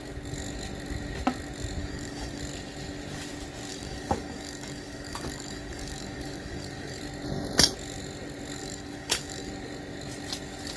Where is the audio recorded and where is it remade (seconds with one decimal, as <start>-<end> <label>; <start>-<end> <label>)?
0.0-1.8 recorded; 1.8-2.4 remade; 2.4-3.7 recorded; 3.7-7.0 remade; 7.0-8.6 recorded; 8.6-9.5 remade; 9.5-10.8 recorded